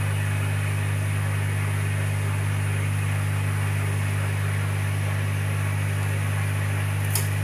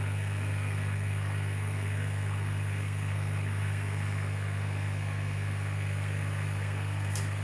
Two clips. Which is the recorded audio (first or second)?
first